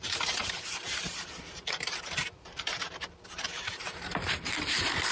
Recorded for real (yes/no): no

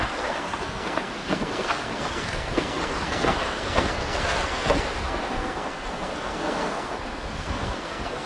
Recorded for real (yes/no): no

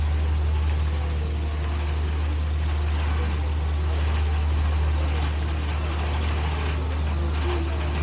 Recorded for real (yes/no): yes